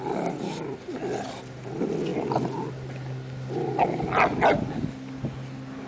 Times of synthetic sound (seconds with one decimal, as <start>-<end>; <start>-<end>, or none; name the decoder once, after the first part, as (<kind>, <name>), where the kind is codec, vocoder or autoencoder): none